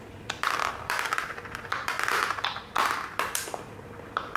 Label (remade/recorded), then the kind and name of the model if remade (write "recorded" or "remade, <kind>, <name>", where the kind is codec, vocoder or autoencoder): remade, vocoder, BigVGAN v2